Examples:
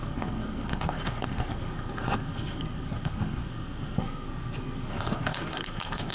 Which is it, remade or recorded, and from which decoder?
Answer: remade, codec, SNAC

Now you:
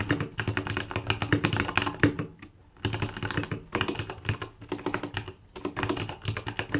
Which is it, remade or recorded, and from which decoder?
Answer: recorded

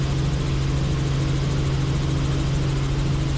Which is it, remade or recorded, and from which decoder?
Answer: recorded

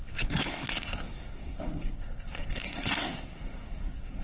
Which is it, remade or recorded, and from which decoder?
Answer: remade, codec, SNAC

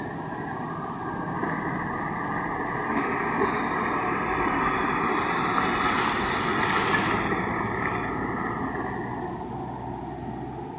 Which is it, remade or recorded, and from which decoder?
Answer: recorded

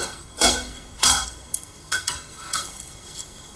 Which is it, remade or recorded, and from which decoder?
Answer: remade, codec, SNAC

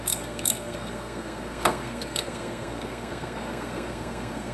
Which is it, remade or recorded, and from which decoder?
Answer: remade, codec, SNAC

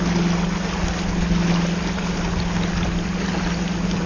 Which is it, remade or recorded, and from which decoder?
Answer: recorded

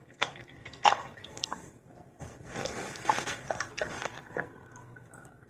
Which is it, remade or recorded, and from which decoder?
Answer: remade, codec, SNAC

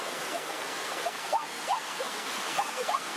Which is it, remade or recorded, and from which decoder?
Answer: remade, codec, SNAC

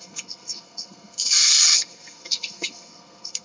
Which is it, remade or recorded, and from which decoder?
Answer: remade, codec, SNAC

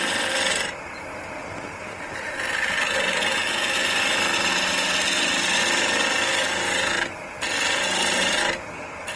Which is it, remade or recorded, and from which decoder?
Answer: recorded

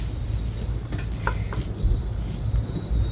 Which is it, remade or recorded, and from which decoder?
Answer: recorded